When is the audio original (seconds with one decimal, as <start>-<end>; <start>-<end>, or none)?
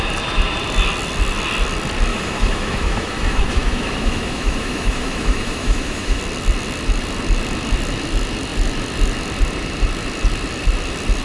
0.0-2.1; 6.2-11.2